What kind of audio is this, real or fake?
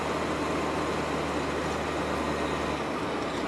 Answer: real